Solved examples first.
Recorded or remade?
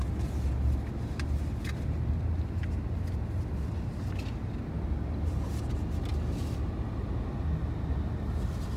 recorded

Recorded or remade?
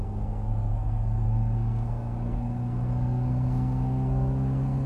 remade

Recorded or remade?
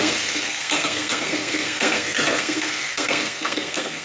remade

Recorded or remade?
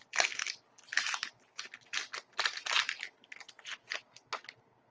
recorded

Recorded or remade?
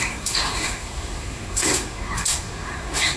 remade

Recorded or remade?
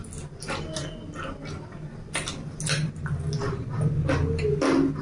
recorded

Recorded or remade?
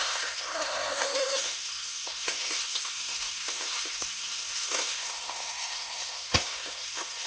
remade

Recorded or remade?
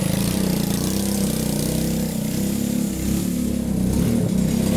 recorded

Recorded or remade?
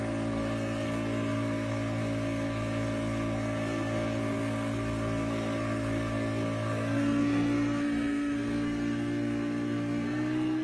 remade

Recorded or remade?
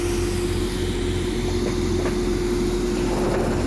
recorded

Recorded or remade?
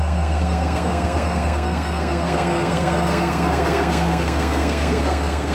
remade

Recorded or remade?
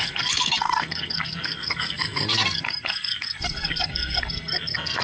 remade